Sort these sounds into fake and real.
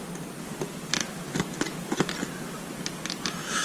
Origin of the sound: real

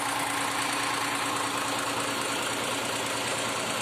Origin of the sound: real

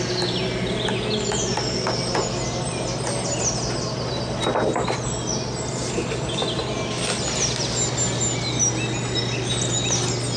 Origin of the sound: real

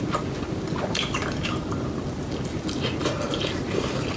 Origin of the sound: real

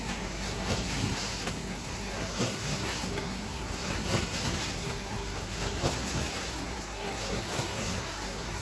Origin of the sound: fake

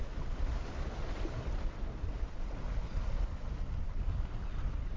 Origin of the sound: real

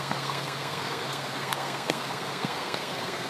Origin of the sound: fake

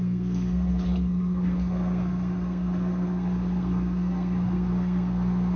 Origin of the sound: fake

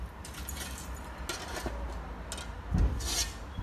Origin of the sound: real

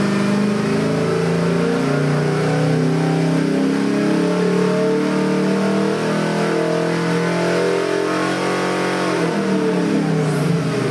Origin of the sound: real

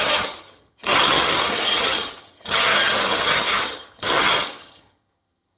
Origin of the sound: fake